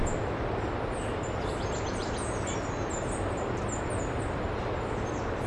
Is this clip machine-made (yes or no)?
no